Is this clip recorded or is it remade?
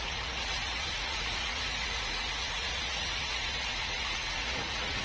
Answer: remade